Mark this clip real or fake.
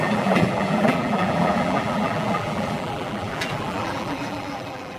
fake